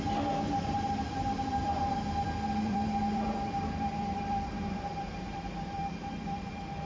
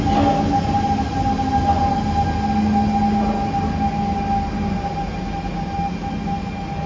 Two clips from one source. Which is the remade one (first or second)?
first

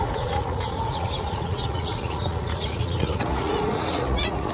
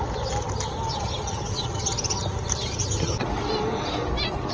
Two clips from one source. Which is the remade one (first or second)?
first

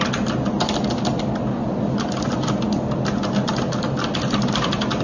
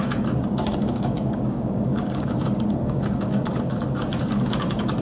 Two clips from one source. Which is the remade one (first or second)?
second